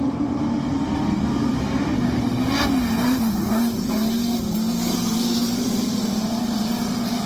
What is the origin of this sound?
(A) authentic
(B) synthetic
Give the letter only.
B